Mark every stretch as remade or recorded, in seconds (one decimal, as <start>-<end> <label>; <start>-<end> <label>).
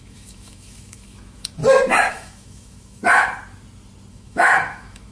0.0-1.6 remade; 1.6-2.1 recorded; 2.1-3.0 remade; 3.0-4.1 recorded; 4.1-5.1 remade